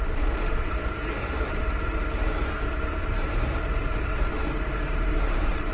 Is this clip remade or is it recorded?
remade